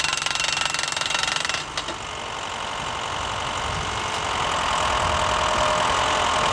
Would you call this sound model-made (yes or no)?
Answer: no